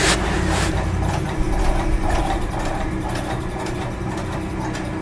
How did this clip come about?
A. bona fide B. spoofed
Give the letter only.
A